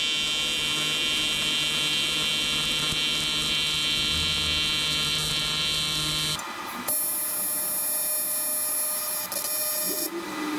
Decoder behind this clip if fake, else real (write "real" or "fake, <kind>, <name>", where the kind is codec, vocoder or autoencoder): real